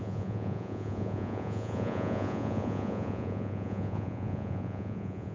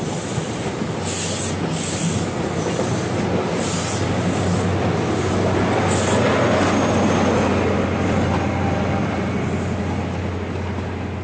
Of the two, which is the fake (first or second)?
first